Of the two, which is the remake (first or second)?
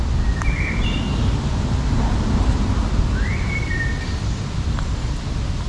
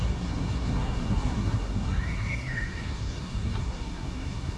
second